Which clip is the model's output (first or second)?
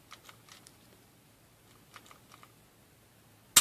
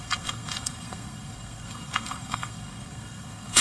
second